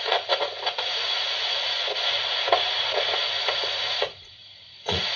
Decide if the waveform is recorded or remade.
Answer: remade